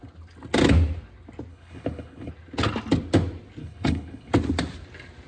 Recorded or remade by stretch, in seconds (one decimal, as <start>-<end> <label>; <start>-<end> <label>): 0.0-1.5 recorded; 1.5-2.3 remade; 2.3-3.6 recorded; 3.6-4.3 remade; 4.3-5.3 recorded